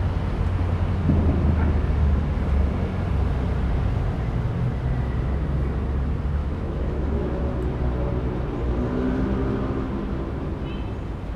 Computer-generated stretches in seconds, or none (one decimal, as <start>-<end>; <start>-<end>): 6.4-7.4